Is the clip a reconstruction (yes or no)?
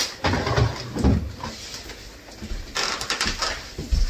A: no